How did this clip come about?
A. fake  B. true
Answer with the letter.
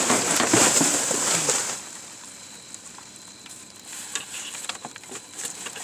A